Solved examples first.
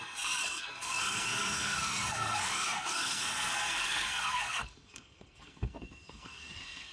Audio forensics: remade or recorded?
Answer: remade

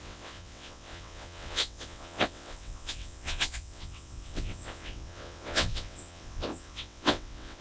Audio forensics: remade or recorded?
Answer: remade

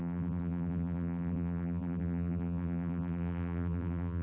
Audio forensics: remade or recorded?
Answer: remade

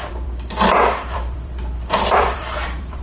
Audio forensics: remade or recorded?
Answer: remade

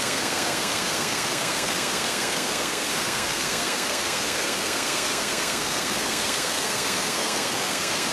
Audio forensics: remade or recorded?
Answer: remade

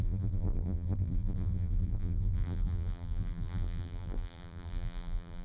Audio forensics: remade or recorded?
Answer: remade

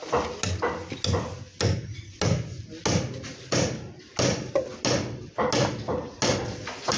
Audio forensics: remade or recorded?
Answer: recorded